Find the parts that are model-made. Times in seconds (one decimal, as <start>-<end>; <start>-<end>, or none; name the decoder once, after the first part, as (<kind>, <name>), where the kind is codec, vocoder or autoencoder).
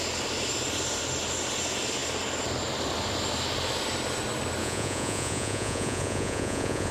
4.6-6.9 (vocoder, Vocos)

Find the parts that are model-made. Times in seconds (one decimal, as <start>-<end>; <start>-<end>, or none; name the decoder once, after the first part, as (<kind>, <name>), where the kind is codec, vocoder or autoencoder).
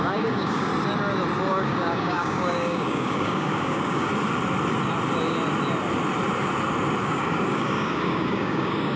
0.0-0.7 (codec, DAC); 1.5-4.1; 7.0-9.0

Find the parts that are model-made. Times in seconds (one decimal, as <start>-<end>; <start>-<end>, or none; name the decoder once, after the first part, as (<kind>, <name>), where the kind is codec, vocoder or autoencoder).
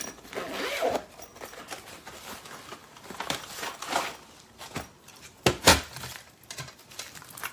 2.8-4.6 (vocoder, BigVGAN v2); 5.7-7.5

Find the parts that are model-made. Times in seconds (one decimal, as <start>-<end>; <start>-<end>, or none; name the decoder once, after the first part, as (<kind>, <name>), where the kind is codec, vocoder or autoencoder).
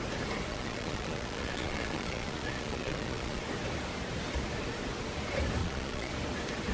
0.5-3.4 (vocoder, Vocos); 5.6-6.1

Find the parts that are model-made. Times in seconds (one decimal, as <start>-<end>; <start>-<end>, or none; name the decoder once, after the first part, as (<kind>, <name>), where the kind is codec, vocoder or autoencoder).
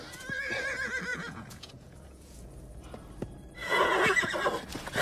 1.1-2.5 (vocoder, Vocos); 3.6-4.3